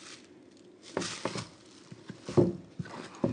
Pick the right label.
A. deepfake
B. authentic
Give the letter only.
B